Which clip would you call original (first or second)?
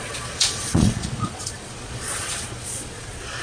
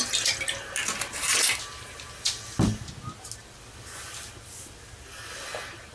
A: second